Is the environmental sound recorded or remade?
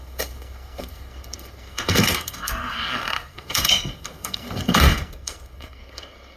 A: remade